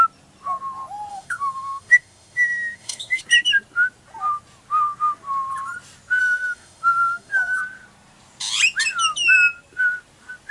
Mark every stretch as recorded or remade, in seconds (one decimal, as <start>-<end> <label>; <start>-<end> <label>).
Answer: 0.0-1.1 recorded; 1.1-3.2 remade; 3.2-6.2 recorded; 6.2-7.6 remade; 7.6-10.5 recorded